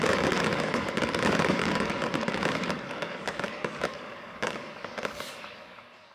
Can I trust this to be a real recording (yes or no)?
no